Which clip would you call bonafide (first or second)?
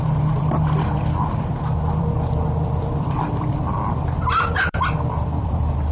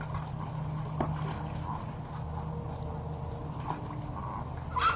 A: second